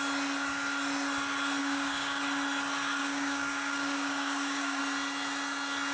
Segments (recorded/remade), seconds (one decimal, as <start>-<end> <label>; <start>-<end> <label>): 0.0-1.6 recorded; 1.6-2.2 remade; 2.2-3.0 recorded; 3.0-4.8 remade; 4.8-5.9 recorded